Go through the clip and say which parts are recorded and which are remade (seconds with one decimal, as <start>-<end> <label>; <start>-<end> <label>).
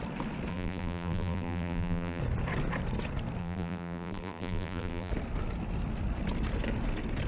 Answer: 0.0-0.5 recorded; 0.5-2.2 remade; 2.2-3.4 recorded; 3.4-5.1 remade; 5.1-7.3 recorded